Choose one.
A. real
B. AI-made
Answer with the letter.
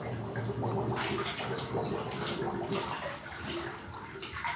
A